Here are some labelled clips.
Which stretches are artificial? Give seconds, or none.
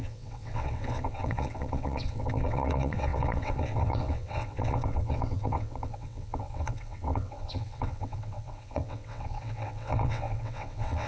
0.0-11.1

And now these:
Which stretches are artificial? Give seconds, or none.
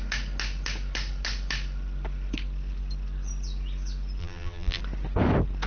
4.2-4.8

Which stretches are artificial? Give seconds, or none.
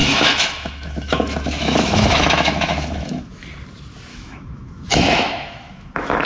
0.0-3.3; 4.1-6.3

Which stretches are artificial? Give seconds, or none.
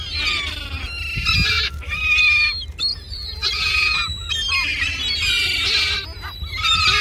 2.9-4.3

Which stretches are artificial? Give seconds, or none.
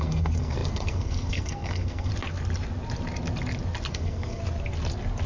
0.0-2.1; 3.9-4.4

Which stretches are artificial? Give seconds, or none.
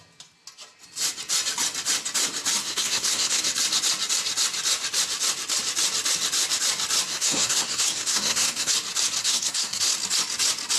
2.6-3.4; 7.1-8.7; 9.2-9.8